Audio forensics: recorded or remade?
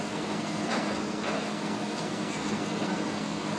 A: remade